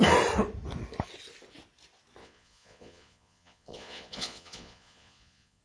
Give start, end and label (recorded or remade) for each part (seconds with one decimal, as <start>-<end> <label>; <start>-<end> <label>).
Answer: 0.0-2.2 recorded; 2.2-5.6 remade